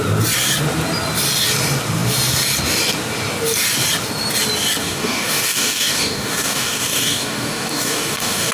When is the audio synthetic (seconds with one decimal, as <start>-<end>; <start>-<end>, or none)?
4.8-8.5